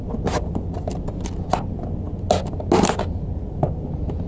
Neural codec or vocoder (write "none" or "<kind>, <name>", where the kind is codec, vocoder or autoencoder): none